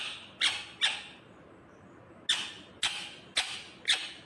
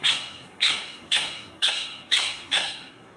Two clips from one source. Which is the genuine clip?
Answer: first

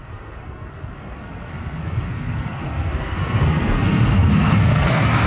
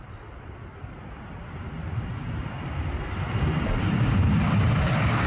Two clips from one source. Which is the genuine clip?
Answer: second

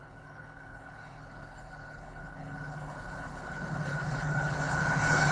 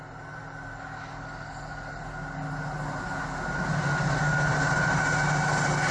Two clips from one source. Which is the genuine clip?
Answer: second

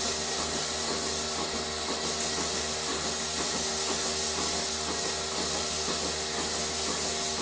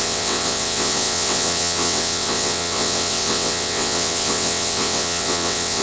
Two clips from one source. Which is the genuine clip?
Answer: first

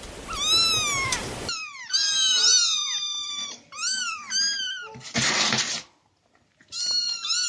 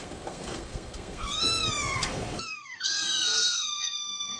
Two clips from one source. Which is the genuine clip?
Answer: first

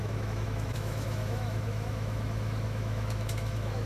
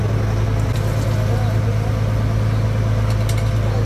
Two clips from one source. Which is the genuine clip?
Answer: second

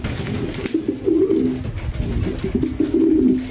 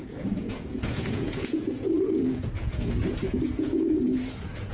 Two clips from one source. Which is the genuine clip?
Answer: first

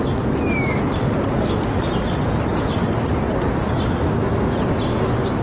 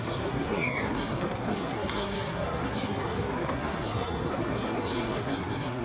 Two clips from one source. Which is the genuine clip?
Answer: first